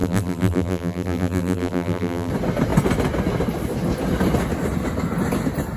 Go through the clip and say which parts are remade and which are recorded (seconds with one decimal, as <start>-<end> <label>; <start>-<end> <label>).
0.0-2.3 remade; 2.3-5.8 recorded